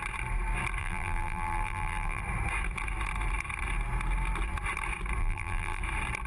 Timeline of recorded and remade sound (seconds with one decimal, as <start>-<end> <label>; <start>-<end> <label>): 0.0-0.8 recorded; 0.8-2.2 remade; 2.2-5.2 recorded; 5.2-5.8 remade; 5.8-6.3 recorded